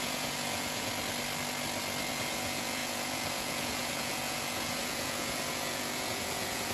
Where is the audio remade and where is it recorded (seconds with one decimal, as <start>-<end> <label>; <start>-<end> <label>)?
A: 0.0-0.9 remade; 0.9-2.1 recorded; 2.1-6.7 remade